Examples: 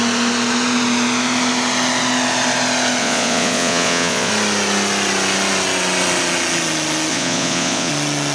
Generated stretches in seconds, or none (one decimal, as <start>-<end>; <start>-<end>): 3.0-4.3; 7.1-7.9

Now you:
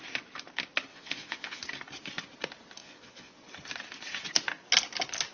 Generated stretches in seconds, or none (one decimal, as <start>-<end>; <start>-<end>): 0.9-1.6; 2.8-3.4

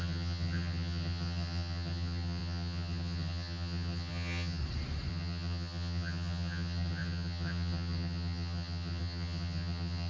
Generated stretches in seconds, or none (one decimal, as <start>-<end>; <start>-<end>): 0.0-4.6; 5.1-10.1

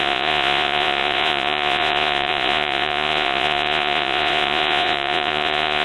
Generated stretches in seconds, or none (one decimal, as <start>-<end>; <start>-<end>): 0.0-5.8

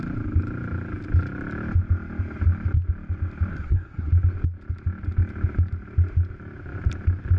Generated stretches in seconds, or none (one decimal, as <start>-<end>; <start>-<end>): 3.5-4.1

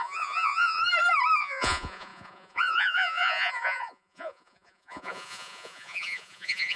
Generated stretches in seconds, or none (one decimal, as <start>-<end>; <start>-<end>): 0.0-0.8; 1.4-6.8

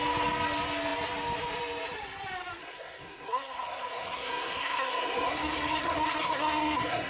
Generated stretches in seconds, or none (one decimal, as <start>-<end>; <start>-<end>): 2.6-7.1